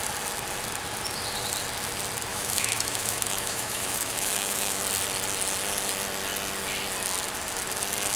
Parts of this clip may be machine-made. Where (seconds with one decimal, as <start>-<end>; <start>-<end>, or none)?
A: 2.3-4.8